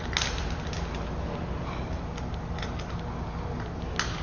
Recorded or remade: recorded